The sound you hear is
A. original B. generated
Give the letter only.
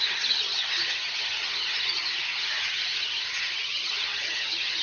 B